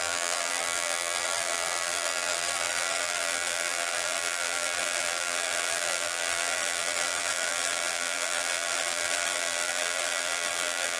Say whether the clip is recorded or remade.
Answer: remade